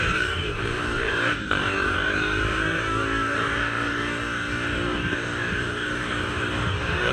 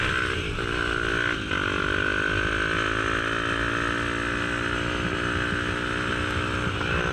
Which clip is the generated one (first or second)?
first